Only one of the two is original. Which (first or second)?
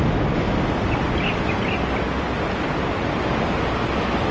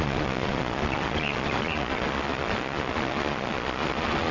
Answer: first